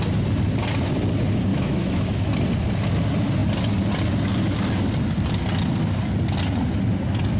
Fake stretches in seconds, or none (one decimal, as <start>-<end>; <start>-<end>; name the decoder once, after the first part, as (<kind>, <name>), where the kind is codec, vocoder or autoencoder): 1.5-2.3 (autoencoder, DAC-VAE)

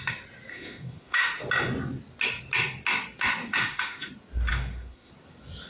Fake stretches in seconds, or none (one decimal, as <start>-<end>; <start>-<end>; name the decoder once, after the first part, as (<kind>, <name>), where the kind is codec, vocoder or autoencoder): 0.5-1.5 (autoencoder, DAC-VAE); 3.4-4.1; 4.5-5.1

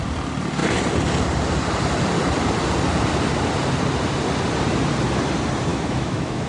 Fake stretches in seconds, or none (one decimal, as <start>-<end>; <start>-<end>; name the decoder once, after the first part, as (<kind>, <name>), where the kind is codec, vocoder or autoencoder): 5.7-6.5 (autoencoder, DAC-VAE)

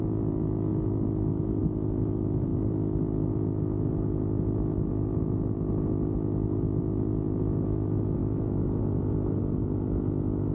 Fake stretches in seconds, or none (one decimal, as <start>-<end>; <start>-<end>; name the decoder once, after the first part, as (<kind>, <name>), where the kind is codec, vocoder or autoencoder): 8.2-8.8 (autoencoder, DAC-VAE)

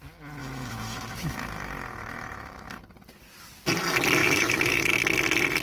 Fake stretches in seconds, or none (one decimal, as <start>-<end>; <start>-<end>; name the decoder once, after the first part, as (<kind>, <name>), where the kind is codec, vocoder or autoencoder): 0.4-2.8 (autoencoder, DAC-VAE); 4.2-5.0

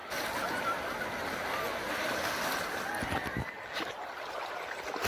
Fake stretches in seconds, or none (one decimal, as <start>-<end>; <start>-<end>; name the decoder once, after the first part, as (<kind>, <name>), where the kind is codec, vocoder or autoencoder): none

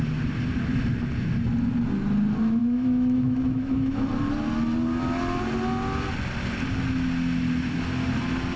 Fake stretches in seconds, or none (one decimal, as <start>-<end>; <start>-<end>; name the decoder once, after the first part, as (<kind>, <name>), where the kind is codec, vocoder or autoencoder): 2.6-4.1 (autoencoder, DAC-VAE)